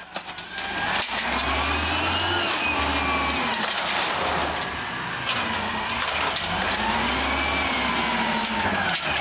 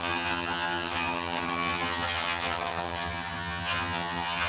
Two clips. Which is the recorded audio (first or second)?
first